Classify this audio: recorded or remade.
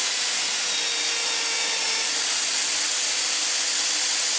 recorded